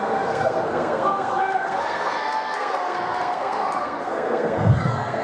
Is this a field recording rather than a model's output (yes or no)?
no